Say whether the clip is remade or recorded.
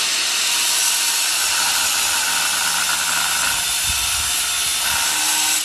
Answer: recorded